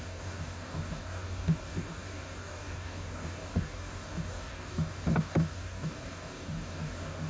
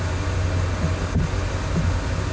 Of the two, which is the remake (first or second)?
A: first